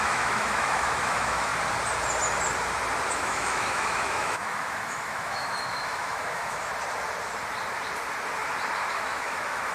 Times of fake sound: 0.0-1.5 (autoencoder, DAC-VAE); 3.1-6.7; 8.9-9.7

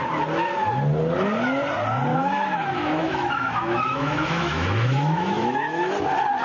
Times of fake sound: 2.1-5.9 (autoencoder, DAC-VAE)

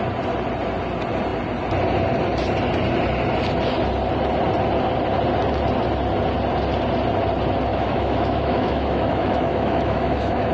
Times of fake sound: 7.7-10.5 (autoencoder, DAC-VAE)

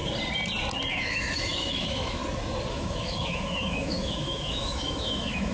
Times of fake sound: 0.9-2.2 (autoencoder, DAC-VAE); 2.7-5.5

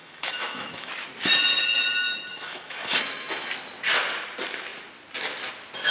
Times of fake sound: 0.0-0.9 (autoencoder, DAC-VAE); 2.3-3.5

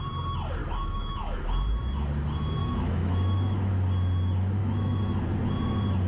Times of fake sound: 0.6-1.4 (autoencoder, DAC-VAE); 2.6-3.7; 4.6-5.2